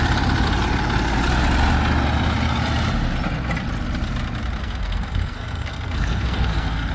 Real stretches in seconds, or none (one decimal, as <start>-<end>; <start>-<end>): 0.0-4.6